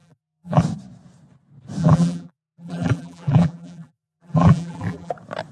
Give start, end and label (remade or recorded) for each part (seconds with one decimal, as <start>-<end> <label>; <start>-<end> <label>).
0.0-0.6 remade; 0.6-1.8 recorded; 1.8-5.1 remade; 5.1-5.5 recorded

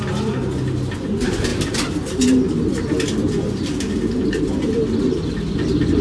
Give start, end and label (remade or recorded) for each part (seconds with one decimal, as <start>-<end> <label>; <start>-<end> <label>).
0.0-6.0 recorded